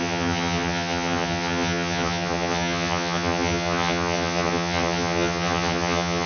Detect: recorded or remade remade